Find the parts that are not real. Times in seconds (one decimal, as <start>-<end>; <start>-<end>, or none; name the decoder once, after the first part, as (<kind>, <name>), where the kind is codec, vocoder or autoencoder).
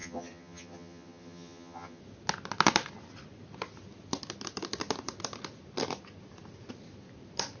0.0-2.0 (vocoder, HiFi-GAN)